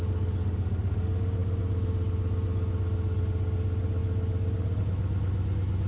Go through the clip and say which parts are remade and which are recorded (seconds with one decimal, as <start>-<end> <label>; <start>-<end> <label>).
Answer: 0.0-5.9 recorded

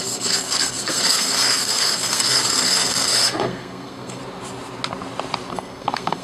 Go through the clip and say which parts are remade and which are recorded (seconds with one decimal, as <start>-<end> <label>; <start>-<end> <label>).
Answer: 0.0-4.2 remade; 4.2-5.5 recorded; 5.5-6.2 remade

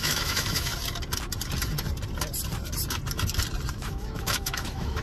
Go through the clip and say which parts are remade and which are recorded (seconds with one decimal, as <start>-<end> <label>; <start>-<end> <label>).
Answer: 0.0-0.7 remade; 0.7-3.7 recorded; 3.7-5.0 remade

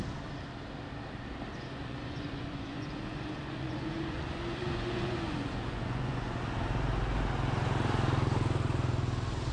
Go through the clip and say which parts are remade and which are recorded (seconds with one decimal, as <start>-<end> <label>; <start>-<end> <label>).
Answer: 0.0-1.5 recorded; 1.5-6.4 remade; 6.4-9.5 recorded

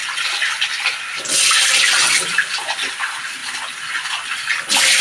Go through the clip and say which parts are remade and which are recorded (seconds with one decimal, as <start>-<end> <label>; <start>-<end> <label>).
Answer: 0.0-3.0 remade; 3.0-5.0 recorded

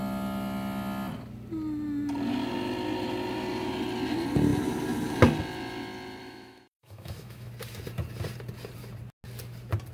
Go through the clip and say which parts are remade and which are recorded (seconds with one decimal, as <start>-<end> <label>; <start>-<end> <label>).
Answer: 0.0-6.2 recorded; 6.2-7.5 remade; 7.5-9.9 recorded

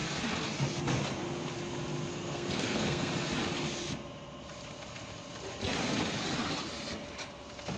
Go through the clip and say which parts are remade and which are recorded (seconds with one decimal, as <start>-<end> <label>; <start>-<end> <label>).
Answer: 0.0-2.1 recorded; 2.1-3.1 remade; 3.1-7.8 recorded